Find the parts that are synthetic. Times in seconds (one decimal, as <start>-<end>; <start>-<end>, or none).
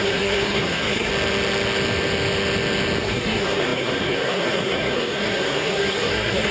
0.0-1.1; 3.0-6.5